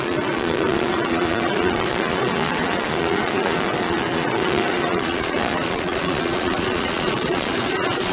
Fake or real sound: fake